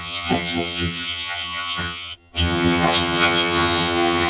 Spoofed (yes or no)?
yes